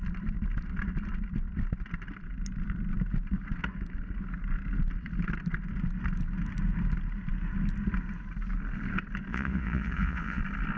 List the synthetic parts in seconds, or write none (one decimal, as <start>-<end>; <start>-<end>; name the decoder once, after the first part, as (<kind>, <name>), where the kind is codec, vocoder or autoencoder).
9.3-10.4 (vocoder, Vocos)